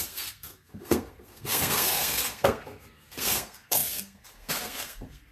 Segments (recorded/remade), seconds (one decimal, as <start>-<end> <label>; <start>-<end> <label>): 0.0-5.3 remade